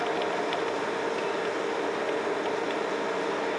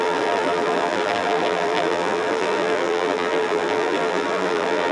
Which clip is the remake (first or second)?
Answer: second